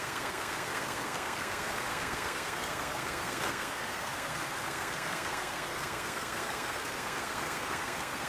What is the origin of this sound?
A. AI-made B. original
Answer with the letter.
A